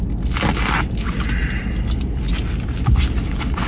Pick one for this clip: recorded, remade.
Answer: recorded